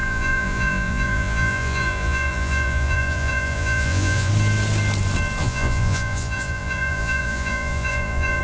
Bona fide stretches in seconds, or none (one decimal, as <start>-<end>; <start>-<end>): 4.3-5.4